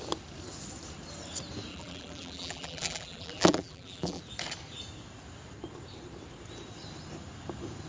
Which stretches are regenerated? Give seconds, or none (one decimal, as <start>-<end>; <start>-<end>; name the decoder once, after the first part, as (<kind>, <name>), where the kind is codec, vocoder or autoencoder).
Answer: 1.7-4.2 (vocoder, BigVGAN v2)